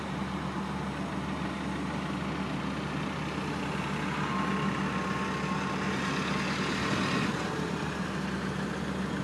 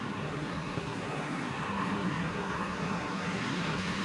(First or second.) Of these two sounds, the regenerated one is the second